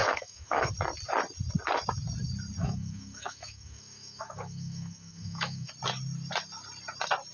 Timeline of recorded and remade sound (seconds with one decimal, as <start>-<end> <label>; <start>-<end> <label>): 0.0-0.7 remade; 0.7-2.6 recorded; 2.6-5.7 remade; 5.7-7.3 recorded